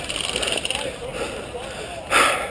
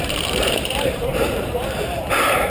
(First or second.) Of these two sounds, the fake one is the second